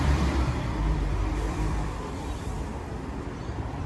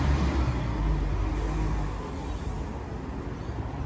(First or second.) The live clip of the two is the second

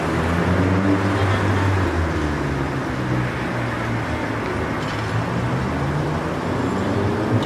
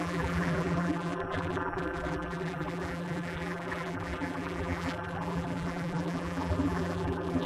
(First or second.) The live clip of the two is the first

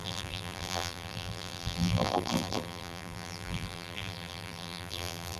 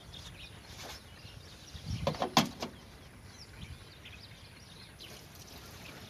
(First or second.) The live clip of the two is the second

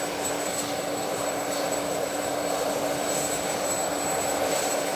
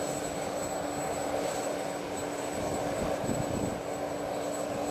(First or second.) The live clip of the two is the second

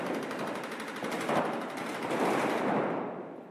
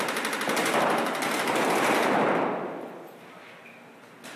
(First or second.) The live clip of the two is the second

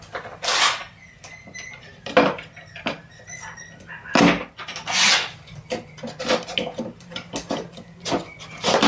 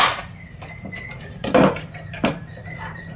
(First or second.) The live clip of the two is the first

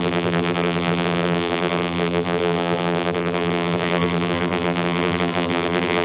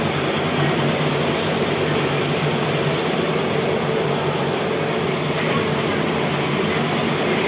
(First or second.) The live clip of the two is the second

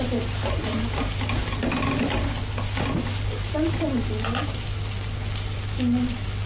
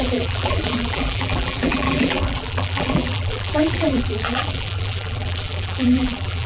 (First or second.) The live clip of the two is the first